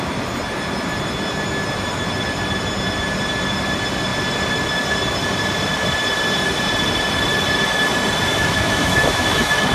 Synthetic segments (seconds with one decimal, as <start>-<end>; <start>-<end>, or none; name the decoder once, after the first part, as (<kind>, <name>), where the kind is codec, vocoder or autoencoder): 8.3-9.7 (autoencoder, DAC-VAE)